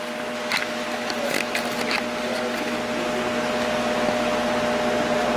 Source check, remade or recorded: recorded